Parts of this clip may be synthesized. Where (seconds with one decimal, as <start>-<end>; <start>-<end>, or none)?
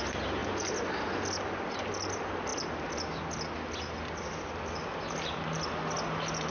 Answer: none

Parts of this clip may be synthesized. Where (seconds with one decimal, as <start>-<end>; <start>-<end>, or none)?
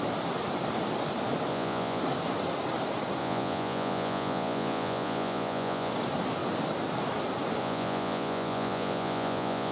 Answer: 1.5-2.0; 3.2-5.9; 7.6-9.7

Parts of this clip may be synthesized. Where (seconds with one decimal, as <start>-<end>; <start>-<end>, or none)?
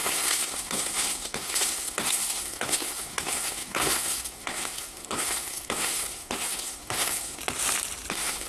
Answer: 0.0-7.4; 8.1-8.5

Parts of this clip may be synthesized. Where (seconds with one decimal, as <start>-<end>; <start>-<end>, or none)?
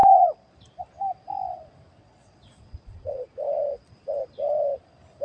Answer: 0.0-0.5; 2.0-3.3